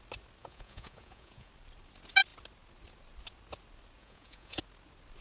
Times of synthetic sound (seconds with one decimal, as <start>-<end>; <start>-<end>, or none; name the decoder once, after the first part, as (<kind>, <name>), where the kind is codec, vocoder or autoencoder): 0.4-1.5 (vocoder, Vocos); 4.0-4.6